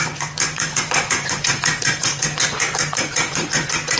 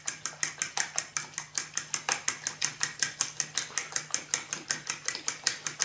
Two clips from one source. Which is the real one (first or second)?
second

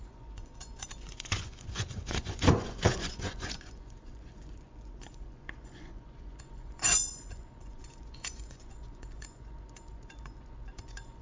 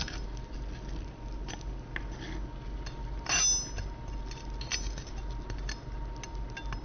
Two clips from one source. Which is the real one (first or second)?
second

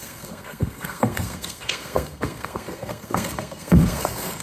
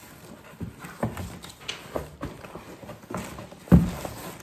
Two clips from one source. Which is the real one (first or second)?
second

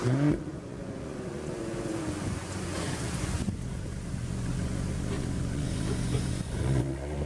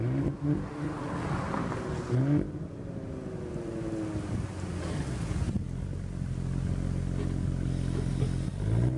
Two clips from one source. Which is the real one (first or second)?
second